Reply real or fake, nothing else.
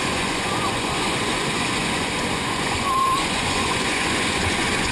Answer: fake